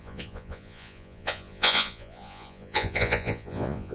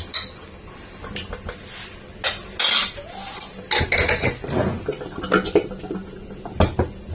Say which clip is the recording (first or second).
second